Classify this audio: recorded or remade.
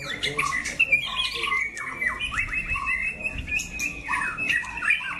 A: recorded